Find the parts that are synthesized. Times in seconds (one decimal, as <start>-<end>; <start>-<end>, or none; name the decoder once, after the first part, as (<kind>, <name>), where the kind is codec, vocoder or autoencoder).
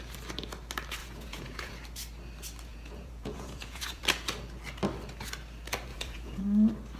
1.0-1.7 (vocoder, Vocos); 2.7-4.0; 5.9-6.4